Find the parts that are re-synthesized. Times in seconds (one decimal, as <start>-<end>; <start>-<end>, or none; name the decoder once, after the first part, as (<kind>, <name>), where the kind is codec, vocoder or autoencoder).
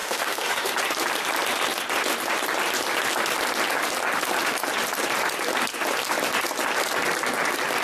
0.0-0.7 (autoencoder, DAC-VAE)